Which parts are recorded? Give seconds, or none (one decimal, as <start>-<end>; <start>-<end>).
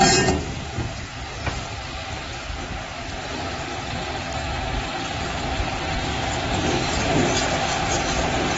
0.0-8.6